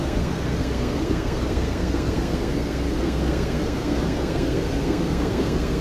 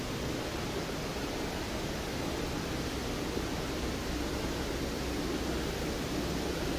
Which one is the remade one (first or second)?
first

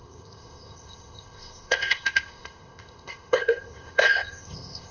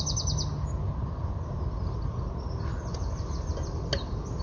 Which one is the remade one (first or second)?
first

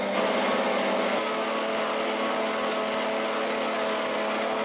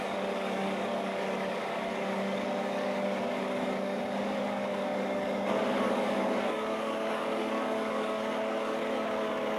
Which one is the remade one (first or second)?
second